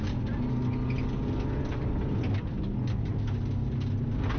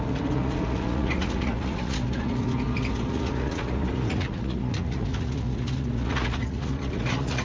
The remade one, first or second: second